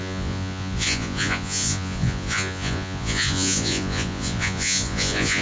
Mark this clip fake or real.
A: fake